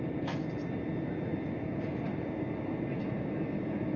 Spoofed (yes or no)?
no